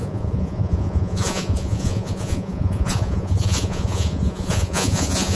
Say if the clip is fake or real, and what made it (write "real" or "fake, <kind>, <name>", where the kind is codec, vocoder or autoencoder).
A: fake, vocoder, Vocos